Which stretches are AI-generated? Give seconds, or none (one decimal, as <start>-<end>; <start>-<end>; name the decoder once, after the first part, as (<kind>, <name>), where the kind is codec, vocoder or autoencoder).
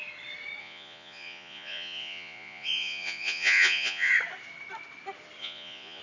0.6-4.1 (vocoder, Vocos); 5.4-6.0